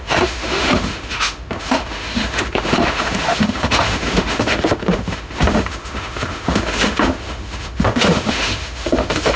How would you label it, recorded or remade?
remade